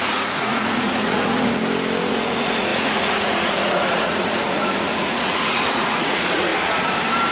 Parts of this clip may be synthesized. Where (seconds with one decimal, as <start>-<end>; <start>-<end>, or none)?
0.0-1.6; 2.1-6.5